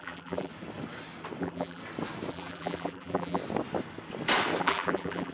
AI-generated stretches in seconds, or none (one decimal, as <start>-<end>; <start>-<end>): 0.0-0.5; 1.4-1.8; 2.3-3.4; 4.6-5.3